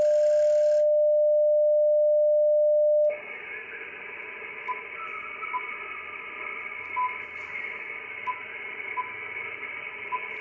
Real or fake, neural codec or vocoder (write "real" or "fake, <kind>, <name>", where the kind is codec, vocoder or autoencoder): real